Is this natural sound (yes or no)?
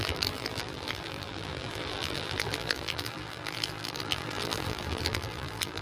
no